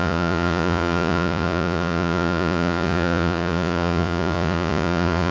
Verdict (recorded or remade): remade